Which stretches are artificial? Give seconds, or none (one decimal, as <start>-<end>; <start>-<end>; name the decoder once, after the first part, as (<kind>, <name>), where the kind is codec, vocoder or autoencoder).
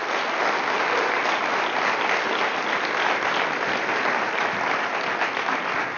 none